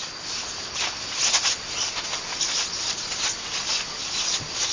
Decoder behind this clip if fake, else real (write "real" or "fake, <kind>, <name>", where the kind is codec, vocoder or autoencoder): real